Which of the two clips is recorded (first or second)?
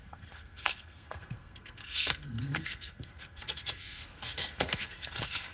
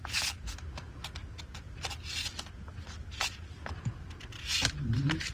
second